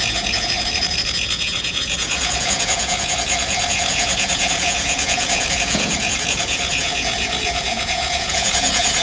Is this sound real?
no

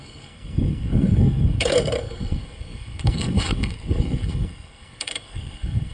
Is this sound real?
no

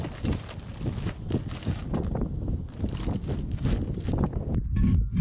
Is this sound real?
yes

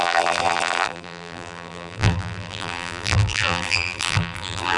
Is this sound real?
no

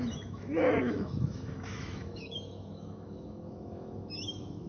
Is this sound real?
no